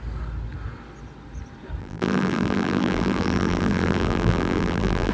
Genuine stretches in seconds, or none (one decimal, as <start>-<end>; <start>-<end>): 0.0-1.8